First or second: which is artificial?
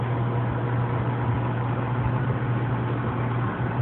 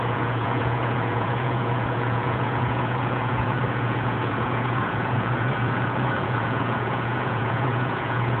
second